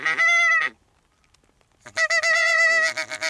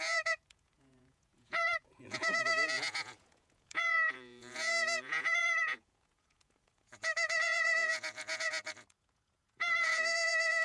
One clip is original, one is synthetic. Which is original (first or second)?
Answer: first